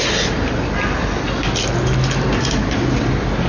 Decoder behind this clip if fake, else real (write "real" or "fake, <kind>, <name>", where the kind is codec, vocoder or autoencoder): real